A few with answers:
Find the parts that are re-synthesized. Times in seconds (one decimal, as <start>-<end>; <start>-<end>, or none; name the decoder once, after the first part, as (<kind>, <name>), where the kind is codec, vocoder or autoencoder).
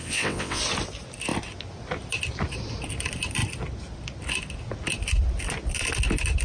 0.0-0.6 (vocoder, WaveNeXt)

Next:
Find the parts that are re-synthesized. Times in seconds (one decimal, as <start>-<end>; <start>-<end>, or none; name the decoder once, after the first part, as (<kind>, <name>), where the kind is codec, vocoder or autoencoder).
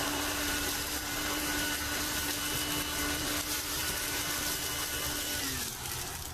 0.0-2.4 (vocoder, BigVGAN v2); 2.9-4.2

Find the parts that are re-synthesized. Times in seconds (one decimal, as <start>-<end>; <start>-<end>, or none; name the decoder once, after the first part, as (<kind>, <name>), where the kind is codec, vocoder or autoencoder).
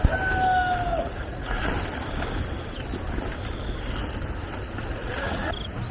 0.9-1.7 (vocoder, Vocos); 5.0-5.5